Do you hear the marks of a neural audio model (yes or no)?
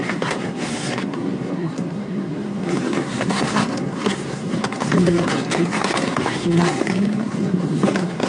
yes